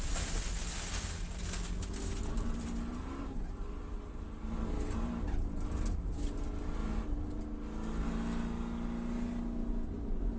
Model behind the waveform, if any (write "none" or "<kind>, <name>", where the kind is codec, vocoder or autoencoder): none